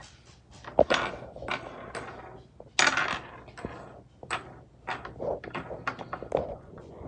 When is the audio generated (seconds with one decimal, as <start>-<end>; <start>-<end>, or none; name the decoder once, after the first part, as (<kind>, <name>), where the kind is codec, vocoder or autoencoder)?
6.4-7.1 (vocoder, Vocos)